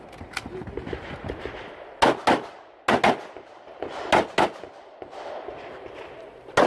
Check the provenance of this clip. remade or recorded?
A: recorded